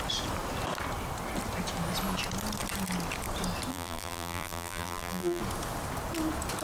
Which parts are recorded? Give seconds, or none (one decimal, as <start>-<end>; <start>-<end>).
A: 0.0-3.7; 5.4-6.6